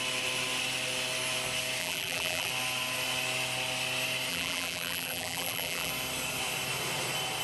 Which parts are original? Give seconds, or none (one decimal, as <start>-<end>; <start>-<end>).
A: 0.0-1.8; 2.5-4.3; 5.9-7.4